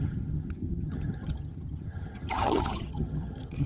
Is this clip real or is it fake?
fake